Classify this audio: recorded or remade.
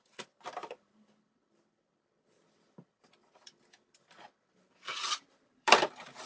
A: remade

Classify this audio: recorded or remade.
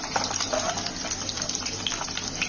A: recorded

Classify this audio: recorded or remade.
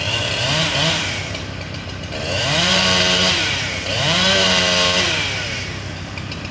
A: remade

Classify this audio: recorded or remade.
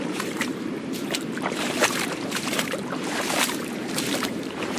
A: remade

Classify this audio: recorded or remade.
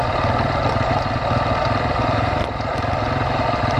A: recorded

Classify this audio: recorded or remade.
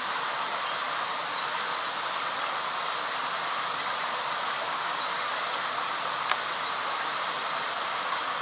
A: recorded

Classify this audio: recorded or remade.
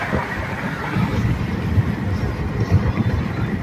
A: remade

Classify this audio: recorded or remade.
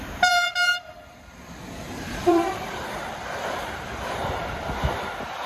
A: remade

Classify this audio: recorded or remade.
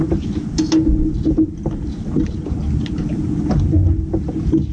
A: recorded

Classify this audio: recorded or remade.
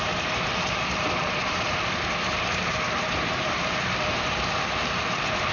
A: remade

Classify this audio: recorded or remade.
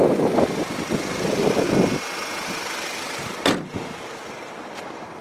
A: recorded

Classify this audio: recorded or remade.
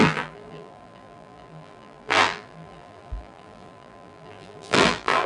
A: remade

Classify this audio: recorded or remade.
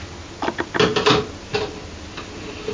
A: recorded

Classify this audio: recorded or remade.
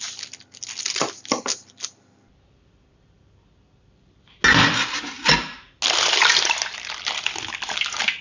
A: recorded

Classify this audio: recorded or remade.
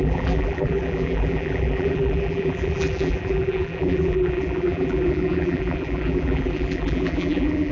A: remade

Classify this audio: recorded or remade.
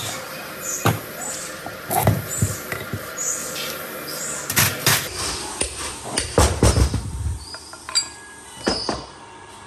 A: remade